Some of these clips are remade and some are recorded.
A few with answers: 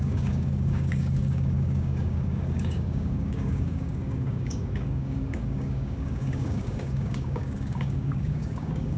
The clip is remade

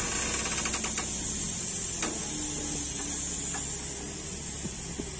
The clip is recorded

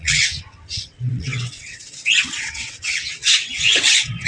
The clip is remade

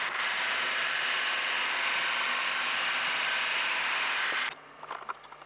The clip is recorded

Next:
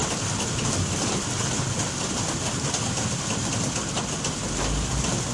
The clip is recorded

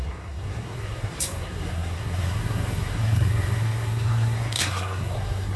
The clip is remade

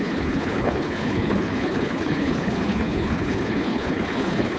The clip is remade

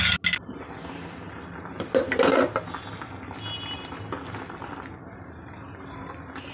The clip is recorded